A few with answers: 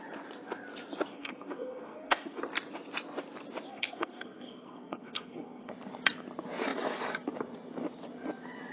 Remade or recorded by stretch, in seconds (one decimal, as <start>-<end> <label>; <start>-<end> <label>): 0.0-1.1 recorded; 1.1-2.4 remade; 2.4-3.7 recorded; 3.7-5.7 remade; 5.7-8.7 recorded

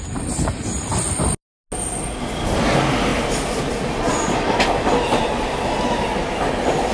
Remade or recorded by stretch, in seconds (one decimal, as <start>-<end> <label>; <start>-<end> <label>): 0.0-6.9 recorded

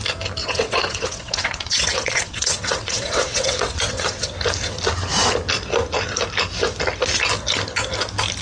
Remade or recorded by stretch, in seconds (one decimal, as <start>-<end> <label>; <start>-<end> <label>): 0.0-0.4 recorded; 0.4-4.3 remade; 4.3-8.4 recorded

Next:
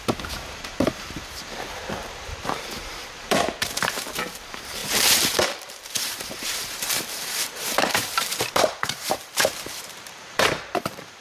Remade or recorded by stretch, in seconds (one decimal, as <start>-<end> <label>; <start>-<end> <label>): 0.0-11.2 remade